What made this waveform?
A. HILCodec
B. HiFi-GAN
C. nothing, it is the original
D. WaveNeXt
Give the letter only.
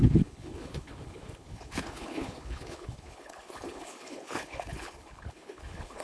A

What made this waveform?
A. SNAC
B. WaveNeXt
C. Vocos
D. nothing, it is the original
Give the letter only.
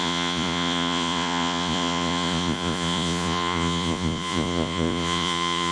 C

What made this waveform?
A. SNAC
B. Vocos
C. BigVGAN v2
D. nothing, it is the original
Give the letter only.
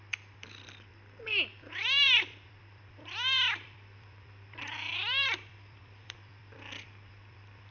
C